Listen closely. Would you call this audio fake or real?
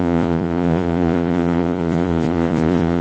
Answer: fake